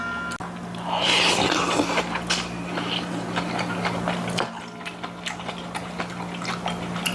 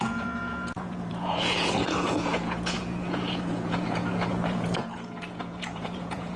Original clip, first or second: first